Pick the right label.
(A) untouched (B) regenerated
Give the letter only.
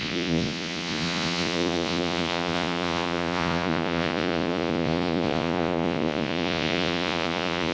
B